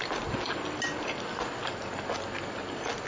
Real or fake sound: real